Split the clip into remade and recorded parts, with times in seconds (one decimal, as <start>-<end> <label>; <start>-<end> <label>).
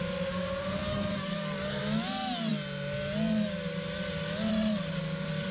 0.0-0.8 recorded; 0.8-1.8 remade; 1.8-5.5 recorded